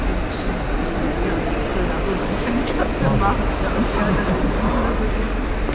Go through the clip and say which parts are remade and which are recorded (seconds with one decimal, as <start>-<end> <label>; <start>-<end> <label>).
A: 0.0-5.7 recorded